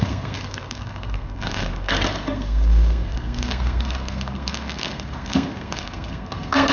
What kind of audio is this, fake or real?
fake